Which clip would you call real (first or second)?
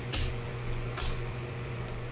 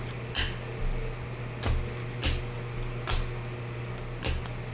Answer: second